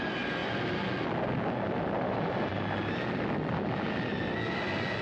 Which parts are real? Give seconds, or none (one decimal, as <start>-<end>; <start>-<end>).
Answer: 0.0-5.0